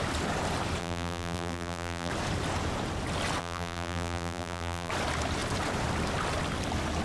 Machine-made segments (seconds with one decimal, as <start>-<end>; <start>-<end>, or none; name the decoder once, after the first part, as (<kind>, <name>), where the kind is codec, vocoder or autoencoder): 0.8-2.1 (vocoder, BigVGAN v2); 3.4-4.9